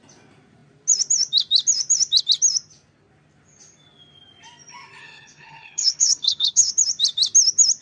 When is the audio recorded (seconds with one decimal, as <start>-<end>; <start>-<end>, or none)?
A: 0.0-5.0; 6.7-7.8